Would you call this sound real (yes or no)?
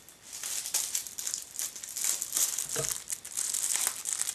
yes